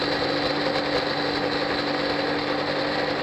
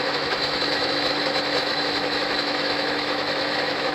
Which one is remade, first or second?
second